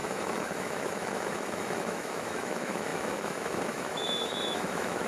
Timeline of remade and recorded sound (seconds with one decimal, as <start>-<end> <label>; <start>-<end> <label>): 0.0-5.1 remade